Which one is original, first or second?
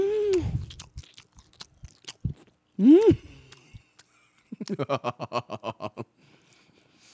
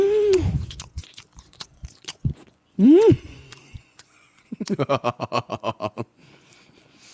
first